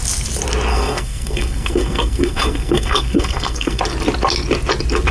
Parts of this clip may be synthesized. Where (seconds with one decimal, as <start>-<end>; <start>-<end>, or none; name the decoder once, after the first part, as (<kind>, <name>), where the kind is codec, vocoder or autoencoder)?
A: 0.7-3.8 (codec, SNAC)